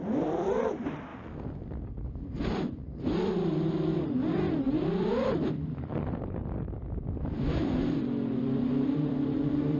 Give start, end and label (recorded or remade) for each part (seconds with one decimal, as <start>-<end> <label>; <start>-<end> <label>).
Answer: 0.0-1.1 remade; 1.1-1.9 recorded; 1.9-9.8 remade